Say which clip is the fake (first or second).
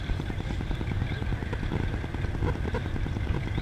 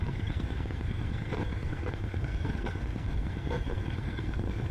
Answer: second